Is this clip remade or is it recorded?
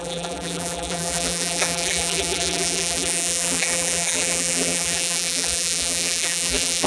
remade